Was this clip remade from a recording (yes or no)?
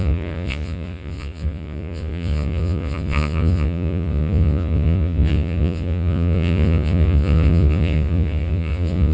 yes